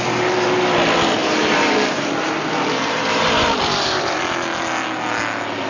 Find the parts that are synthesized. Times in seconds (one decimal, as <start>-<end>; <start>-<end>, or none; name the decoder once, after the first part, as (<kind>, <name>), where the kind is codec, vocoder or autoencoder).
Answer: 1.2-4.2 (vocoder, BigVGAN v2)